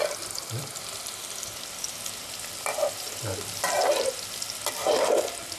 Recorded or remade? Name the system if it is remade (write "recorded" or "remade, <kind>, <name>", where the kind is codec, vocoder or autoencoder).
remade, vocoder, BigVGAN v2